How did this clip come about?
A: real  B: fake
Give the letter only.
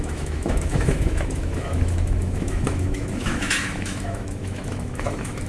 B